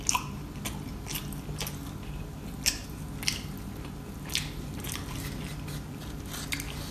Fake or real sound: real